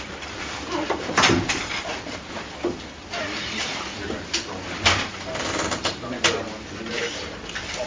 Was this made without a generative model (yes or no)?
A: no